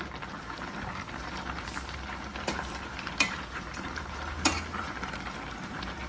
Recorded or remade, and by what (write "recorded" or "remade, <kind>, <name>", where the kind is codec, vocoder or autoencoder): remade, vocoder, BigVGAN v2